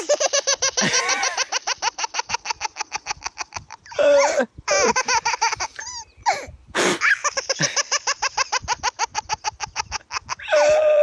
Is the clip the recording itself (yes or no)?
no